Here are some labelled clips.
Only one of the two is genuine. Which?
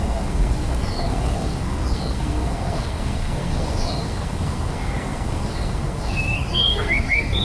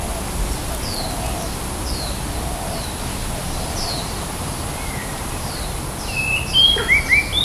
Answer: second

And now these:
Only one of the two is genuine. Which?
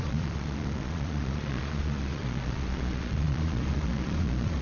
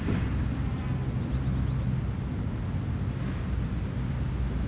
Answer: second